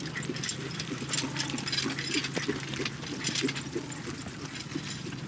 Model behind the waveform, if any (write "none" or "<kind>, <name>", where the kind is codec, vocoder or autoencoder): none